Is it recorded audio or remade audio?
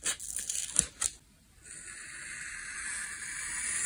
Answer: recorded